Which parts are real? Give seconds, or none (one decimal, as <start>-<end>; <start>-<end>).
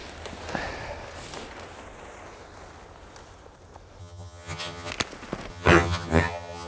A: 0.0-4.0; 4.9-5.5